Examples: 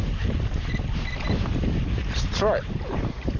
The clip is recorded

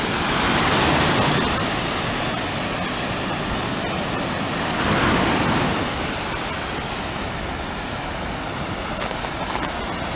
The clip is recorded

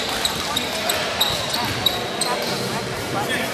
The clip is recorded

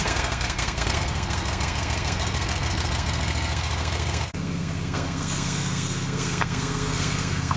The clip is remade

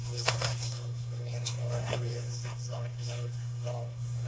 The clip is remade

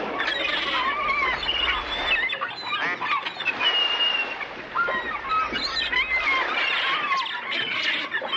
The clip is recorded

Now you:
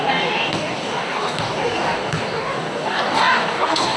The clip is remade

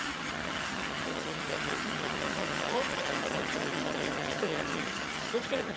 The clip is remade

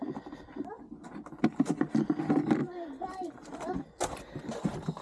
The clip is recorded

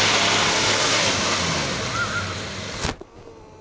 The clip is recorded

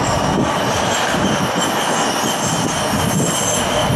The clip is recorded